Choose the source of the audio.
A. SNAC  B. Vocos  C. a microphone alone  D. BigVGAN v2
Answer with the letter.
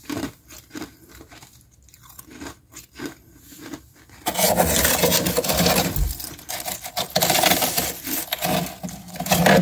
C